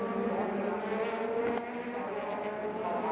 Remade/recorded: recorded